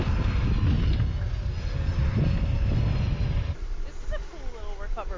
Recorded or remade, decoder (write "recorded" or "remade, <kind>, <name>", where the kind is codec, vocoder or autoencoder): recorded